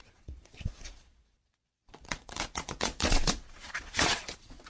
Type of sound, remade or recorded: remade